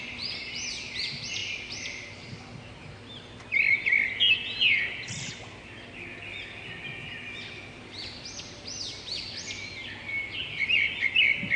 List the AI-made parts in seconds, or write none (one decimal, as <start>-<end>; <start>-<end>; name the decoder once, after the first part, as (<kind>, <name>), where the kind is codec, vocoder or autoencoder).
none